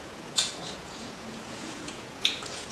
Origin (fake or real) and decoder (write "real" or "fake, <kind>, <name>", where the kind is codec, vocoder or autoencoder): fake, vocoder, Vocos